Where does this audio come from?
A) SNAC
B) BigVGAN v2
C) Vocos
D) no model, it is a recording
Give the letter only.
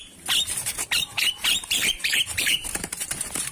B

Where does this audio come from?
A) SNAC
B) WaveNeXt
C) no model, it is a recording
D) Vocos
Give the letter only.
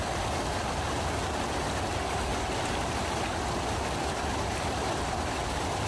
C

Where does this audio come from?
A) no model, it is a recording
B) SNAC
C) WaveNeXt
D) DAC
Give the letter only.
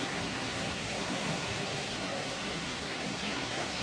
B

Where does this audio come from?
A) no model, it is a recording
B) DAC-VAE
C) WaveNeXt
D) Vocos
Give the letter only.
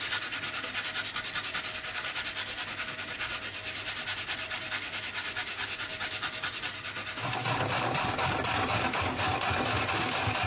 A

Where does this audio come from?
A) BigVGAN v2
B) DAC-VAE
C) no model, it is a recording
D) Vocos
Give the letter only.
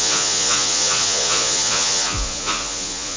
D